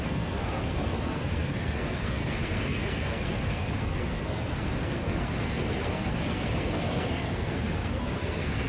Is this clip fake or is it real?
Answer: fake